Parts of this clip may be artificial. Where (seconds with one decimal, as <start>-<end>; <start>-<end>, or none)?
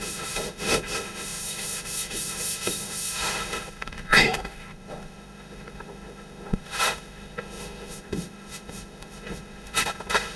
0.0-10.4